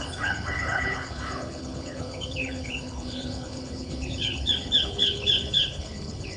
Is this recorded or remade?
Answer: remade